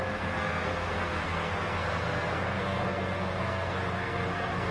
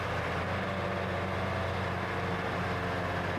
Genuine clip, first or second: second